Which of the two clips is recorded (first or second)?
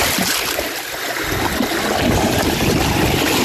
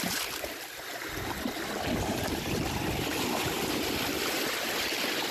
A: first